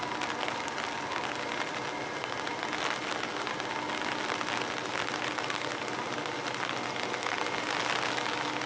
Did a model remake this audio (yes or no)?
no